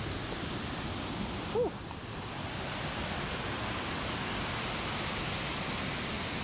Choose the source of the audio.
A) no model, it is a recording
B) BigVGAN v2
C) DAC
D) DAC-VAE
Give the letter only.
A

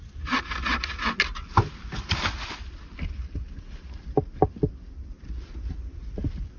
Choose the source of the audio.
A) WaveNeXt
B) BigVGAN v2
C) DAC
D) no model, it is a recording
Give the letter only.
D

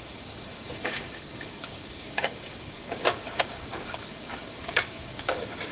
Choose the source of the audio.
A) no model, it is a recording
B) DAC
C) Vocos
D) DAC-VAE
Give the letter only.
B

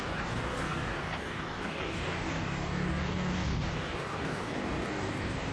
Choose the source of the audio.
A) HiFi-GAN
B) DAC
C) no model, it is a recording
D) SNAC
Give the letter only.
B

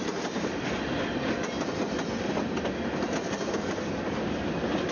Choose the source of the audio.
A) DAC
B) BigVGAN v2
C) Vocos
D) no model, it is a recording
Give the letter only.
D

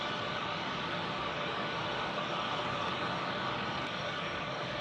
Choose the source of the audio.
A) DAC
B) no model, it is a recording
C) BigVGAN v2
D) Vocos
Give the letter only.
A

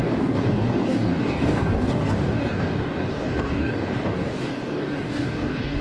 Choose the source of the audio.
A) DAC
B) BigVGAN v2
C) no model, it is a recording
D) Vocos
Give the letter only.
A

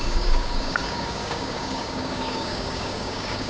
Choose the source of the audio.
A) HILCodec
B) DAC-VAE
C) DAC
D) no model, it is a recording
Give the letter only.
C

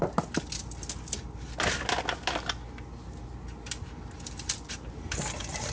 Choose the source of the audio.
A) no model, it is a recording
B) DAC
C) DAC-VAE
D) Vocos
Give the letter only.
A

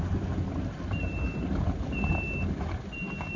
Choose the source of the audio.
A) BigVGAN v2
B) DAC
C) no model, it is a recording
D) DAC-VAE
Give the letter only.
C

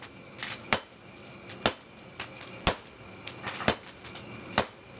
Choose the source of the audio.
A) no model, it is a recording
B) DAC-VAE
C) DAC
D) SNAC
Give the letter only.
A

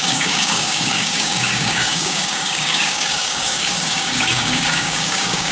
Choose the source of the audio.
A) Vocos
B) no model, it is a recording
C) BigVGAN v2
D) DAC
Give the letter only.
D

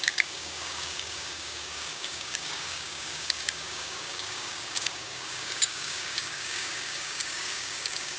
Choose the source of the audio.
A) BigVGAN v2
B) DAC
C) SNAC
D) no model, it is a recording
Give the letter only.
B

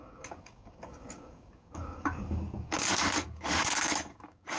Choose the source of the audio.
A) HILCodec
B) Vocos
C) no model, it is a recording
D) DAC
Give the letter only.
D